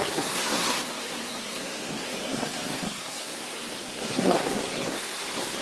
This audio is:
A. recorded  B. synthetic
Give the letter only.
B